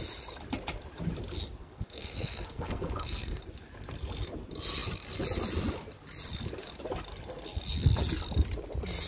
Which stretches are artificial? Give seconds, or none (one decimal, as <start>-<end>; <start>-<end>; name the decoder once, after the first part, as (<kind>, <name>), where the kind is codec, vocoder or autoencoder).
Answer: 1.6-3.4 (codec, SNAC)